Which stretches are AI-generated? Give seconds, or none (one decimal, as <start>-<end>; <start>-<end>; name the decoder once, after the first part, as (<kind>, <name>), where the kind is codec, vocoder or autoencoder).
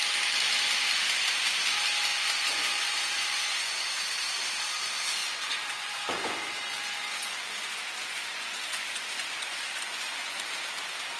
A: 2.1-3.8 (vocoder, Vocos); 5.2-10.5